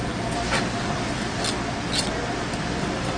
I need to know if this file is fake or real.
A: real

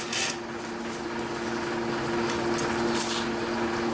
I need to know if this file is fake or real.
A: real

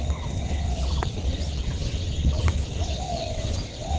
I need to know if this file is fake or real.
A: fake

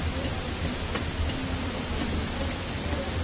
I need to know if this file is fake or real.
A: real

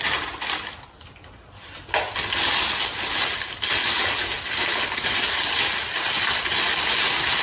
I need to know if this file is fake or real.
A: real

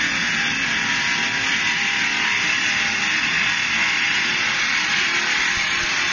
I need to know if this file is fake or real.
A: real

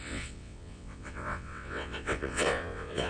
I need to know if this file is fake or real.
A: fake